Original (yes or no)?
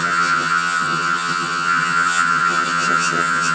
no